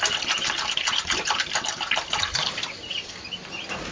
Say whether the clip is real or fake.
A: fake